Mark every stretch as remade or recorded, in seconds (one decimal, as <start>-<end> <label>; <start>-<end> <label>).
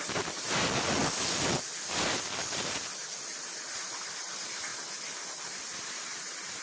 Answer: 0.0-6.6 recorded